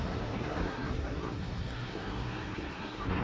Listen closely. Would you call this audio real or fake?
fake